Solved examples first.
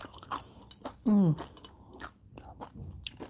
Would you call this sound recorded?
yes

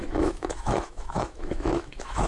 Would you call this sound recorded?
no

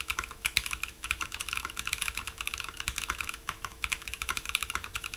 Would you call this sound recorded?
no